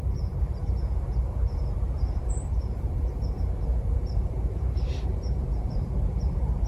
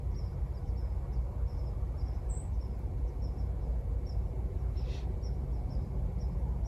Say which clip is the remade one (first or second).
first